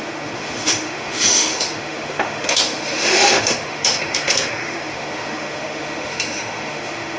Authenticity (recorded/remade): remade